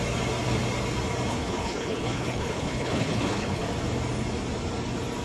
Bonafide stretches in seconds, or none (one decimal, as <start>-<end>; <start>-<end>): 0.0-1.3; 3.6-5.2